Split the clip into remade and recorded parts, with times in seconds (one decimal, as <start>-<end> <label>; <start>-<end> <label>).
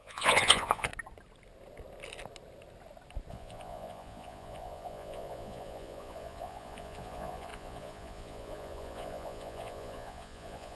0.0-0.9 remade; 0.9-3.3 recorded; 3.3-10.8 remade